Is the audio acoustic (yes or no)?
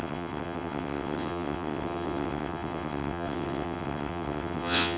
no